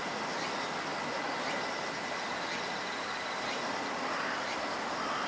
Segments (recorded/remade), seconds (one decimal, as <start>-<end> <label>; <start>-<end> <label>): 0.0-5.3 recorded